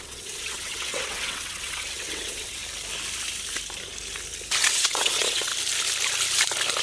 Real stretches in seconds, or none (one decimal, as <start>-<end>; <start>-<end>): 2.6-4.7; 5.5-6.8